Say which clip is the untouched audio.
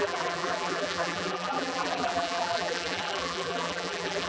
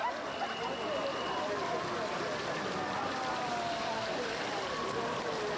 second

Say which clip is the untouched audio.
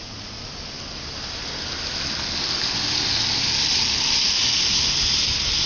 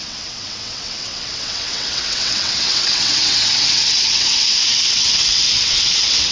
first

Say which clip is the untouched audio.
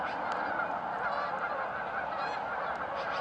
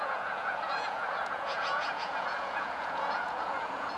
first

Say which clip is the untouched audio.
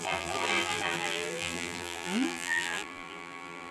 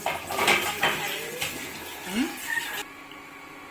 second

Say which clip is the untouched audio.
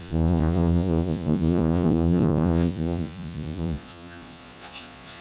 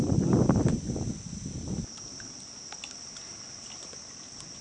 second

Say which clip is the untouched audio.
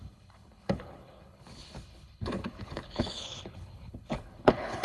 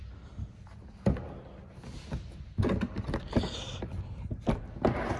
second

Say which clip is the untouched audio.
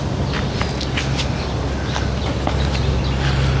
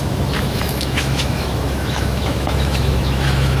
first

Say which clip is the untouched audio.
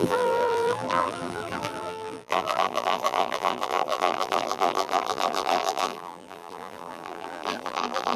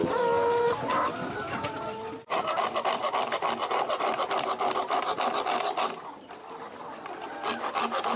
second